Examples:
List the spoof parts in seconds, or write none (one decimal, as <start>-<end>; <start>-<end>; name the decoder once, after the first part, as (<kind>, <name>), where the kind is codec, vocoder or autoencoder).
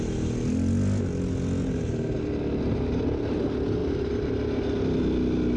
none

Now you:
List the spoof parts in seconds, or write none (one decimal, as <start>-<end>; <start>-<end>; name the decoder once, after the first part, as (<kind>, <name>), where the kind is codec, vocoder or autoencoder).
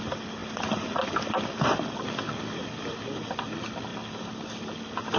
0.4-3.5 (vocoder, BigVGAN v2); 3.9-4.8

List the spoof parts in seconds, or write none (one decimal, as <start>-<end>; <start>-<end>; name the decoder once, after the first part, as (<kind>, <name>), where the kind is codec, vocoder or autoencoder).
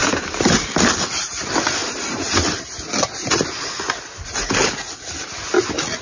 0.0-0.7 (vocoder, BigVGAN v2); 1.8-2.9